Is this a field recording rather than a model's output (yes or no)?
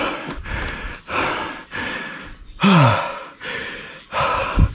yes